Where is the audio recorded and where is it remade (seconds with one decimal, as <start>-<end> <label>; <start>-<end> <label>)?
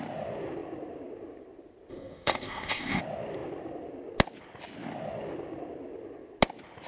0.0-1.9 recorded; 1.9-3.0 remade; 3.0-6.9 recorded